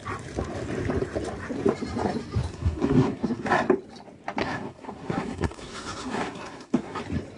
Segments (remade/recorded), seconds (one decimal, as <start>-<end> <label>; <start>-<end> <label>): 0.0-2.5 recorded; 2.5-3.5 remade; 3.5-4.4 recorded; 4.4-7.0 remade; 7.0-7.4 recorded